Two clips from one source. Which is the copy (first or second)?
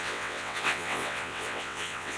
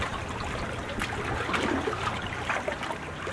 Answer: first